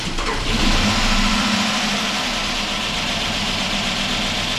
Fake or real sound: fake